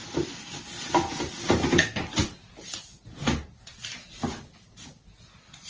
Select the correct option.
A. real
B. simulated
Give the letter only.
A